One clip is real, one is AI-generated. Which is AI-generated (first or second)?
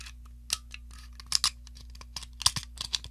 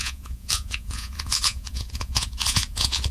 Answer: second